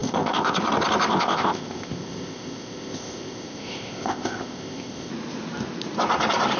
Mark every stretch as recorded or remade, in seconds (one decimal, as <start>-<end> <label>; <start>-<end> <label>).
0.0-0.6 remade; 0.6-1.1 recorded; 1.1-5.1 remade; 5.1-6.6 recorded